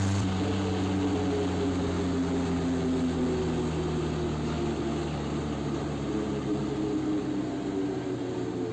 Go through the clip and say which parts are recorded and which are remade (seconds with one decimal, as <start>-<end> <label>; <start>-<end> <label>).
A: 0.0-5.4 recorded; 5.4-6.6 remade; 6.6-8.7 recorded